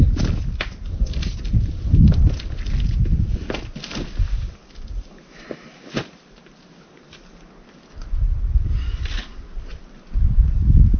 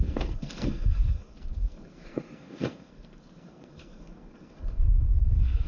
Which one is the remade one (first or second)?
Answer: second